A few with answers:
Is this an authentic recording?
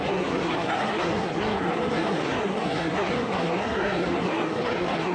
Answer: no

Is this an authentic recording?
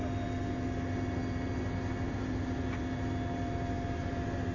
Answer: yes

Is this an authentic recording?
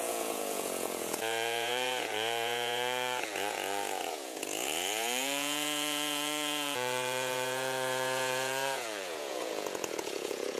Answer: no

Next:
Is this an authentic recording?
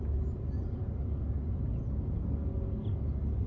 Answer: yes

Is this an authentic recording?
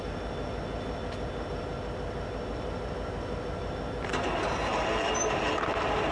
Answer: yes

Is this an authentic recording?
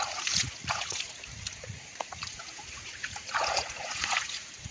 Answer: no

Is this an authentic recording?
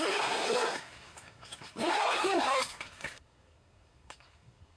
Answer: no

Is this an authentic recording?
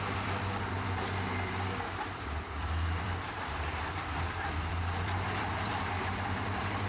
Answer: no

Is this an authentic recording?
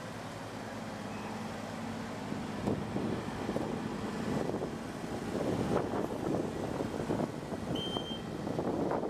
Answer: yes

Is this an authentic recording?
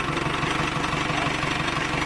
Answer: yes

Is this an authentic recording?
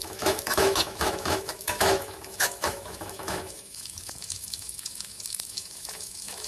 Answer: no